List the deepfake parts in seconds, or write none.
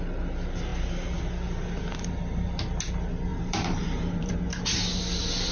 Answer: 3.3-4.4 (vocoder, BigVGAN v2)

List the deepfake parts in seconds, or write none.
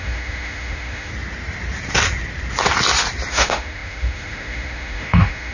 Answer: 0.0-1.1 (autoencoder, DAC-VAE); 3.3-5.5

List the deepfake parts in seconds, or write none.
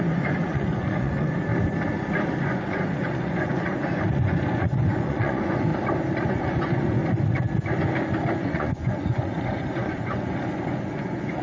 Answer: 0.0-1.5 (vocoder, Vocos); 2.4-5.7; 6.3-7.0; 8.3-11.4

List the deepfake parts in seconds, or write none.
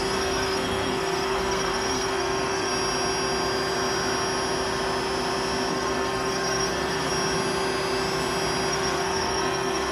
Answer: 0.0-2.7 (codec, SNAC); 5.7-7.1; 8.7-9.9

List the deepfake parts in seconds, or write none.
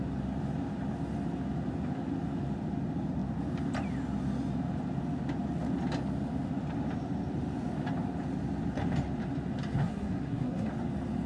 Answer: 9.8-10.7 (codec, SNAC)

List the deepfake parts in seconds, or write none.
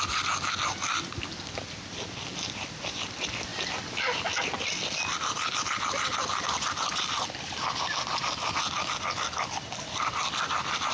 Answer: none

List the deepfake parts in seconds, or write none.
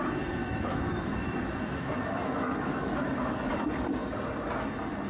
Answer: 0.4-3.5 (autoencoder, DAC-VAE)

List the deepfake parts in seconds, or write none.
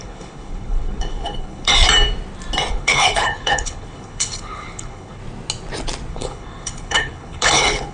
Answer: 0.0-1.7 (codec, HILCodec); 2.7-5.2; 6.1-7.9